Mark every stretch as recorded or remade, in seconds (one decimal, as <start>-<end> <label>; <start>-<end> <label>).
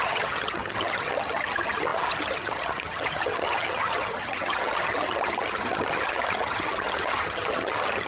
0.0-8.1 remade